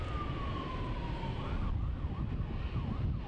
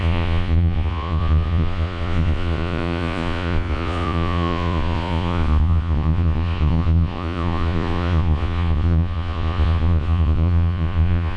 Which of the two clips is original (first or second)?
first